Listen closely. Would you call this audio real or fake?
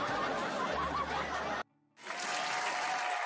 real